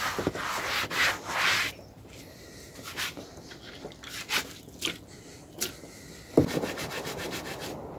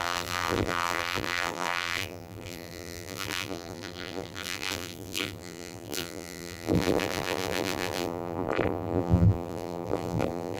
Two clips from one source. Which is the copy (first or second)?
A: second